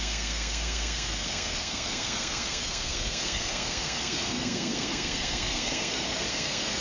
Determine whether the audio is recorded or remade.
remade